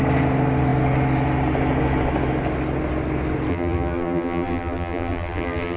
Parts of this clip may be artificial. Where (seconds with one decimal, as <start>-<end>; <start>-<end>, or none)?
3.5-5.8